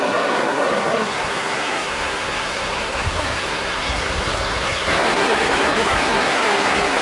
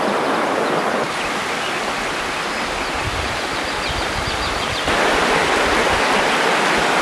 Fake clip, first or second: first